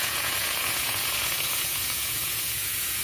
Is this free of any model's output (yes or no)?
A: no